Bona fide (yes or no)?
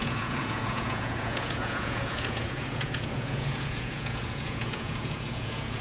no